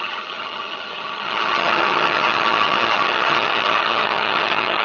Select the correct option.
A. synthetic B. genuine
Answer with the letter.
A